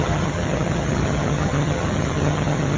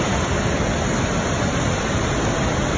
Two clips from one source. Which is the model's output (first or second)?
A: first